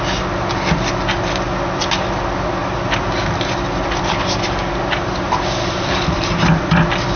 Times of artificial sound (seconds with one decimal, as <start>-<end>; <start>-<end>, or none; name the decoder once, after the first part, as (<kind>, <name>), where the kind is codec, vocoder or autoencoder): none